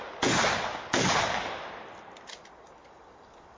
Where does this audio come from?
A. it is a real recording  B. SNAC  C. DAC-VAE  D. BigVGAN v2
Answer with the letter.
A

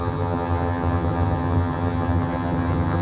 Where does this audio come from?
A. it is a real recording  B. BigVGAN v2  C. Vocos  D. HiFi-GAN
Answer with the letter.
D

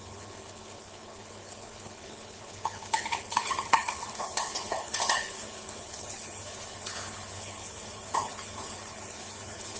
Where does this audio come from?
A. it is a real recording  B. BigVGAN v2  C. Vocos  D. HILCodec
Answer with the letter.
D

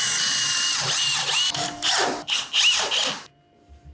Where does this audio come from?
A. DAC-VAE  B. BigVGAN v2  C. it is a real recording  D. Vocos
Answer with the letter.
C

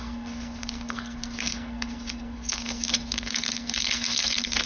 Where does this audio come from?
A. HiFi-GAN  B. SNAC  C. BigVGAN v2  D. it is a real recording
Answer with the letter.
B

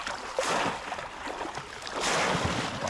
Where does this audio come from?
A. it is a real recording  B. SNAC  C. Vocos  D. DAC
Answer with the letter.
A